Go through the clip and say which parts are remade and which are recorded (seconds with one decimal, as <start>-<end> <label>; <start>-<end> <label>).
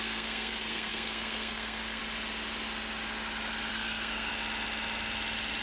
0.0-2.0 remade; 2.0-3.7 recorded; 3.7-4.3 remade; 4.3-5.6 recorded